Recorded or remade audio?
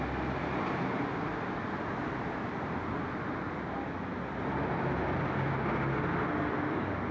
recorded